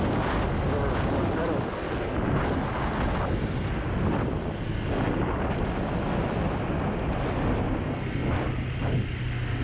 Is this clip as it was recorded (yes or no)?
yes